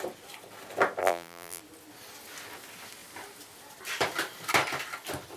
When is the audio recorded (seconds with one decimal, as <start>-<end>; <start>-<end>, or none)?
0.0-1.0; 1.6-5.4